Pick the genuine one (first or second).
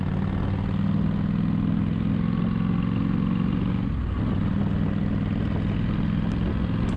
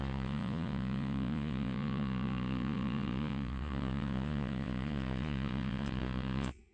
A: first